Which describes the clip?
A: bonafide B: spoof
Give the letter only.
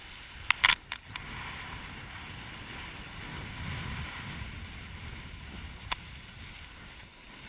A